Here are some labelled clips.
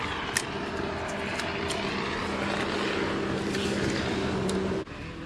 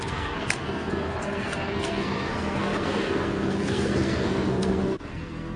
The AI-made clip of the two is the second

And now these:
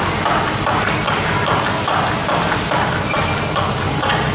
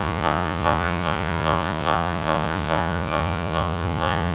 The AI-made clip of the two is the second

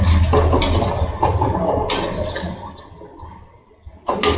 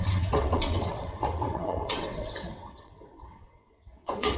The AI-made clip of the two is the second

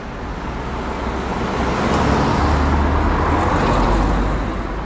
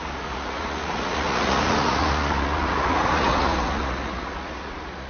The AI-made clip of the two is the second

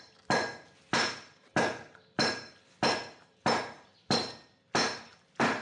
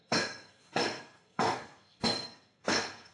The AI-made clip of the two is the second